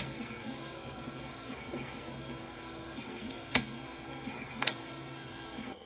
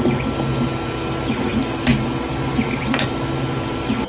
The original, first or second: second